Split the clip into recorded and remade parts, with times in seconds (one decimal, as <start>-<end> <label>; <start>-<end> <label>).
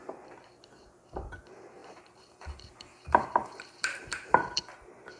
0.0-1.8 recorded; 1.8-5.2 remade